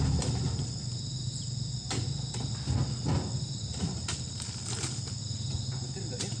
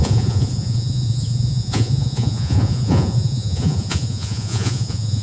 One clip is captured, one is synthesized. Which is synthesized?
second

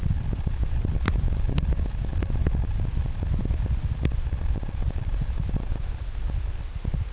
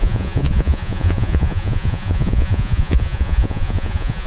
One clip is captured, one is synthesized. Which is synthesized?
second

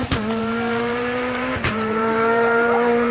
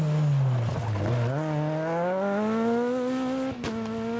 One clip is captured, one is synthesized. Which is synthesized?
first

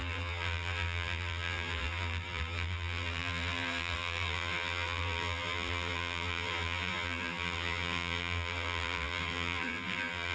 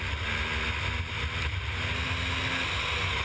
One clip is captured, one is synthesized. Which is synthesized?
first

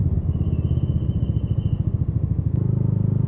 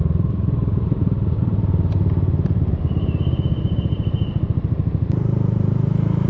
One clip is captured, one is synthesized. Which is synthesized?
second